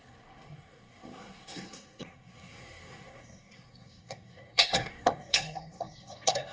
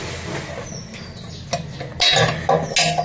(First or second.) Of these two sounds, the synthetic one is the first